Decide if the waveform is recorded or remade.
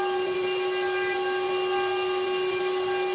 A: recorded